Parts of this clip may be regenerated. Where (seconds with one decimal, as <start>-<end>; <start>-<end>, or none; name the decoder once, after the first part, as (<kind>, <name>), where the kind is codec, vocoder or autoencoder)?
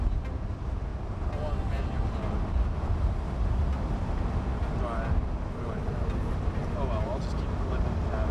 none